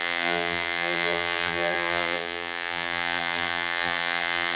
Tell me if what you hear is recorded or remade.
remade